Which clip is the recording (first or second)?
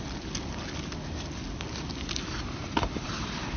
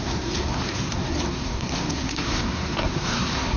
first